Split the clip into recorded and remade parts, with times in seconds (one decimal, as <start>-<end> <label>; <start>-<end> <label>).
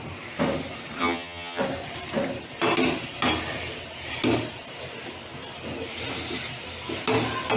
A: 0.0-1.0 recorded; 1.0-1.6 remade; 1.6-7.6 recorded